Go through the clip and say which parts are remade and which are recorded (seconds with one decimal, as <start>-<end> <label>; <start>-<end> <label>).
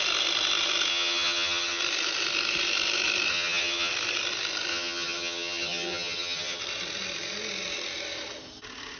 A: 0.0-0.9 recorded; 0.9-1.8 remade; 1.8-3.3 recorded; 3.3-3.9 remade; 3.9-4.7 recorded; 4.7-6.6 remade; 6.6-9.0 recorded